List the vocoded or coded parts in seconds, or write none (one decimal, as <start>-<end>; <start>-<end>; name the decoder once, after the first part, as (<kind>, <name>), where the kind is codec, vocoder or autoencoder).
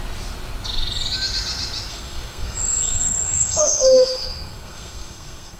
1.9-5.6 (codec, SNAC)